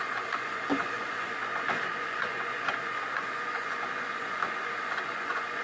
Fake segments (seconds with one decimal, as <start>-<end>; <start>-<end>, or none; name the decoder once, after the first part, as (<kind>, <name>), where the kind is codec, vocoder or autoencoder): 0.0-5.6 (vocoder, Vocos)